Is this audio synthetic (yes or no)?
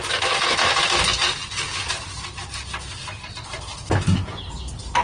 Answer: no